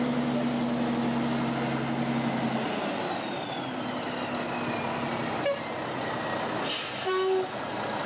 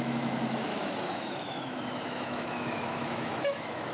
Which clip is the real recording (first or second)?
first